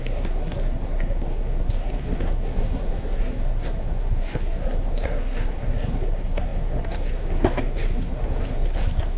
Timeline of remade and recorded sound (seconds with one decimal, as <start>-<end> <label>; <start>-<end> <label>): 0.0-9.2 remade